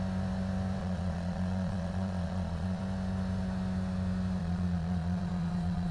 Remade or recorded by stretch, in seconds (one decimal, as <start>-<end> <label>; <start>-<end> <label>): 0.0-0.8 recorded; 0.8-2.8 remade; 2.8-4.4 recorded; 4.4-5.9 remade